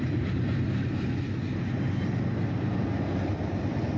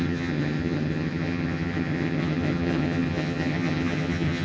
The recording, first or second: first